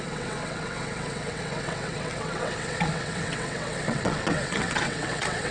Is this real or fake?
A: fake